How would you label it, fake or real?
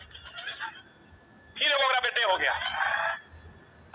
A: real